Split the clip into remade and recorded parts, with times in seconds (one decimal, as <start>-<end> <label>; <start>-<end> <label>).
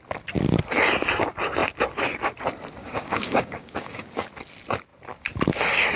0.0-2.8 recorded; 2.8-4.3 remade; 4.3-6.0 recorded